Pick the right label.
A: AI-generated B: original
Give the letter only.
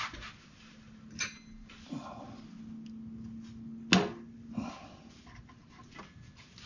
B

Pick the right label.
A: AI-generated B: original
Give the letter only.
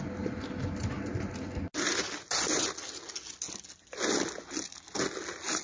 B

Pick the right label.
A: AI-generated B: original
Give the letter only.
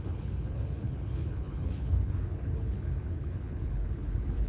A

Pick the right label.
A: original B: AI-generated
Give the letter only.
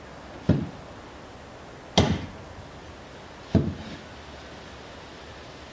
A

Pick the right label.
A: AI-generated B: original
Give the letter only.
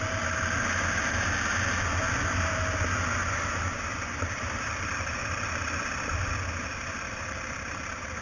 B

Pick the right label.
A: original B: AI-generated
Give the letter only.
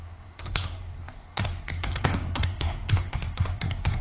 B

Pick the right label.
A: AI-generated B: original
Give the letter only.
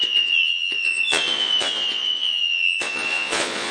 A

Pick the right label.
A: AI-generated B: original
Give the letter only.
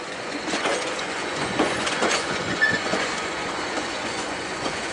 A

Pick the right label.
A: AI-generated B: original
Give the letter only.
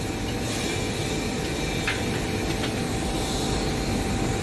B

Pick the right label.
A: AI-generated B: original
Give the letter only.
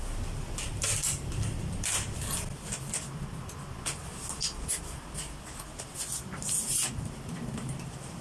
B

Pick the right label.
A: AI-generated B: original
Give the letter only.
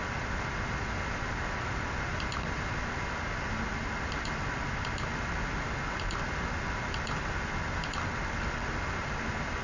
B